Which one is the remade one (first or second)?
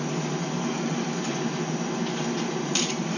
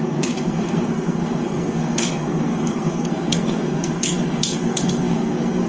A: second